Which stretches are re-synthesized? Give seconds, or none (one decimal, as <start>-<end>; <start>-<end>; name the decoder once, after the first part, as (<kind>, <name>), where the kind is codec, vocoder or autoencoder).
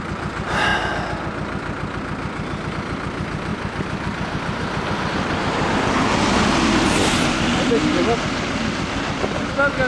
0.0-0.7 (vocoder, BigVGAN v2); 2.7-9.9